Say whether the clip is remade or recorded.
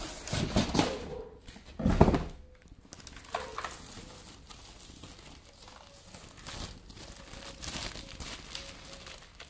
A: recorded